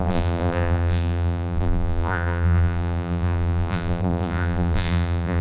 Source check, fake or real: fake